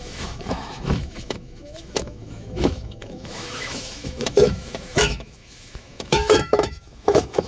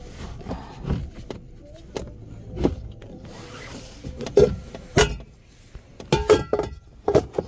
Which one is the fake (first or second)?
first